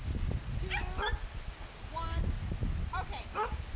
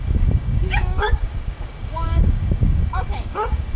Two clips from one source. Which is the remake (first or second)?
second